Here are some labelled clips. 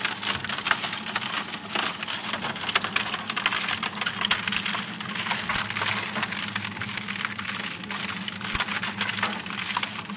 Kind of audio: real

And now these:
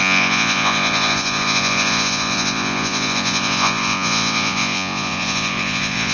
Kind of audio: fake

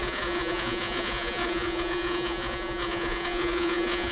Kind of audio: fake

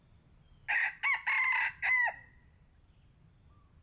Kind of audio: real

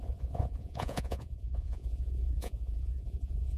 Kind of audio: fake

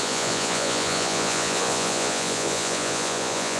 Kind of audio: fake